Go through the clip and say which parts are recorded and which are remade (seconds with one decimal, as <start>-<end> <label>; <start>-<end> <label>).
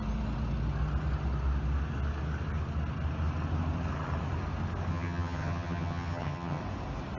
0.0-4.9 recorded; 4.9-6.6 remade; 6.6-7.2 recorded